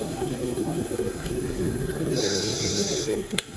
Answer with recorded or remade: remade